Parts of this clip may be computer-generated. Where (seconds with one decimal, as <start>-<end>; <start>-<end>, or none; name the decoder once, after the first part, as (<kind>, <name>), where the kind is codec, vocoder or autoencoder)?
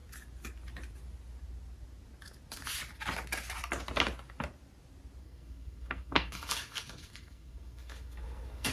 5.2-8.7 (codec, SNAC)